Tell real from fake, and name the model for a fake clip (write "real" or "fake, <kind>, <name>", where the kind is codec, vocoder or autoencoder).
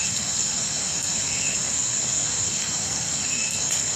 fake, codec, SNAC